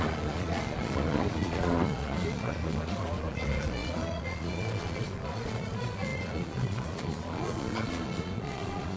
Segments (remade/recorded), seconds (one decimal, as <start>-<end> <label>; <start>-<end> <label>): 0.0-9.0 remade